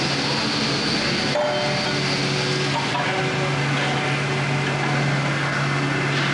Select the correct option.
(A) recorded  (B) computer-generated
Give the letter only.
A